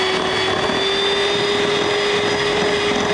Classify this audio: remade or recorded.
recorded